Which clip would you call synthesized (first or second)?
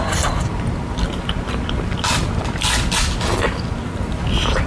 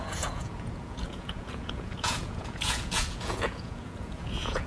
second